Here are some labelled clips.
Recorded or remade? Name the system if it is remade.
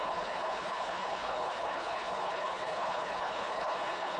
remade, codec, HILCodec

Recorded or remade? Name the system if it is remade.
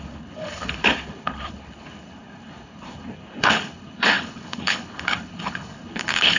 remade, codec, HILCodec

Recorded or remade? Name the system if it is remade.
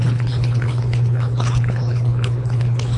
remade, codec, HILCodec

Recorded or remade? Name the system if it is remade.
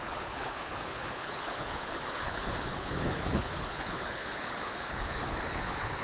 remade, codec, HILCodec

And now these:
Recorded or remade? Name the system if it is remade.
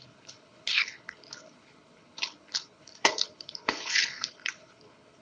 remade, codec, HILCodec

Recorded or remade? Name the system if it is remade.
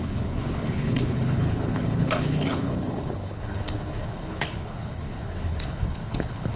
remade, codec, HILCodec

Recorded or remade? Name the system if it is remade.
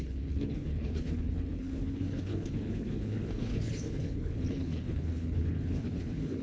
remade, codec, HILCodec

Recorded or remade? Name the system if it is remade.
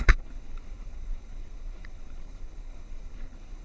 remade, codec, HILCodec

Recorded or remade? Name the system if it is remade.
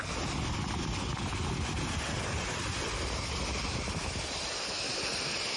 recorded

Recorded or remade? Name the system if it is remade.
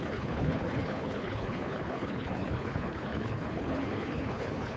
remade, codec, HILCodec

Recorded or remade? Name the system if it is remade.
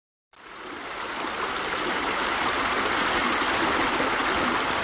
recorded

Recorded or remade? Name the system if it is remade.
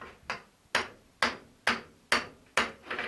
recorded